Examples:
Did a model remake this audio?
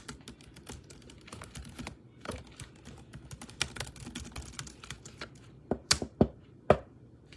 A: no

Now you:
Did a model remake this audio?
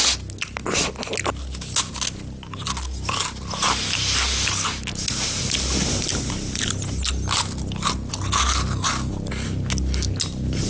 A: no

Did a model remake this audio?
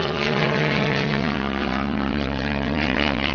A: yes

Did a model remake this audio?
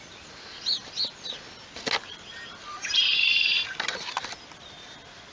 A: no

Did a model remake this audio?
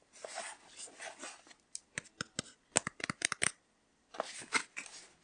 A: no